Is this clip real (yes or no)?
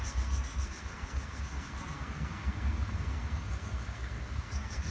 no